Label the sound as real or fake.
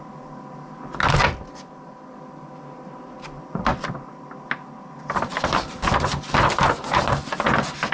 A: real